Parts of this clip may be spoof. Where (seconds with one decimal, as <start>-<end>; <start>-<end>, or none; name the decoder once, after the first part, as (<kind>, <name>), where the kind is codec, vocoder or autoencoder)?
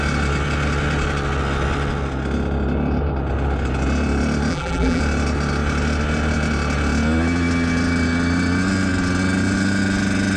4.5-5.0 (vocoder, BigVGAN v2)